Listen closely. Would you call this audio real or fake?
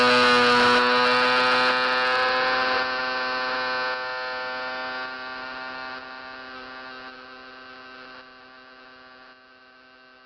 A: real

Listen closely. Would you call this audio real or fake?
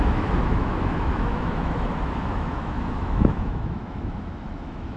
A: fake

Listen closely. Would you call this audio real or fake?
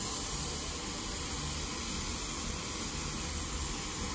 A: real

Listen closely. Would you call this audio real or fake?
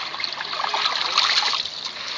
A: real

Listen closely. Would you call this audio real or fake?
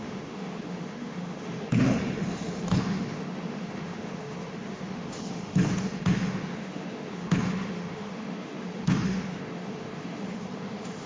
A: fake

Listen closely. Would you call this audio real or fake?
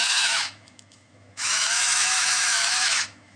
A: fake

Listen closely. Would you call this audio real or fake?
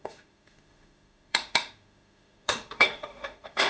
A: fake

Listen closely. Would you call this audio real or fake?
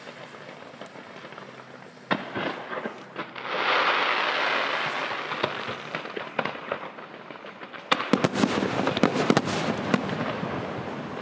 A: real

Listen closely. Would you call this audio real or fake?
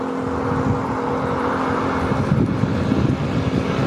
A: real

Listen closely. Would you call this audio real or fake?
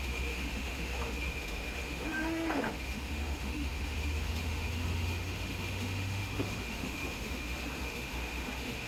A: fake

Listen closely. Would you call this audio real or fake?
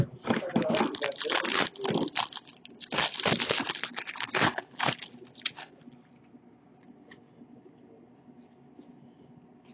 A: real